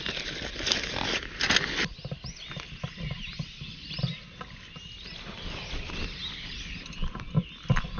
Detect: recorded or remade recorded